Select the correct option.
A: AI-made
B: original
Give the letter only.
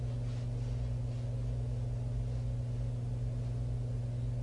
B